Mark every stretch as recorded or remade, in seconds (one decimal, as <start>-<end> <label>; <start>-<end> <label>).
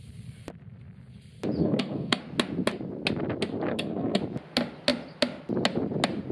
0.0-1.6 recorded; 1.6-2.2 remade; 2.2-3.7 recorded; 3.7-4.2 remade; 4.2-6.3 recorded